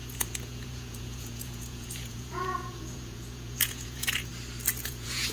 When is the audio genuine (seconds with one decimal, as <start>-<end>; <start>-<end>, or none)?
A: 4.3-4.8